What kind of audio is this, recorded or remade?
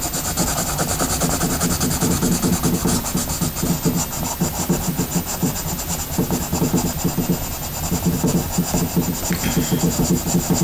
recorded